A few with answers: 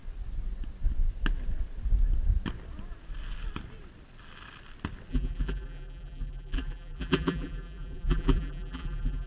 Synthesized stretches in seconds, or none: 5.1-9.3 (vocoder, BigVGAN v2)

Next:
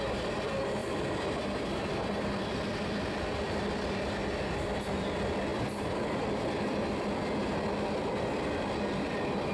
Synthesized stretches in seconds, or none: 0.8-3.7 (vocoder, BigVGAN v2)

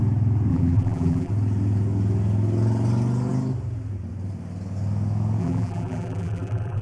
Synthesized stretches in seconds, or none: 0.5-1.3 (vocoder, BigVGAN v2); 5.4-6.8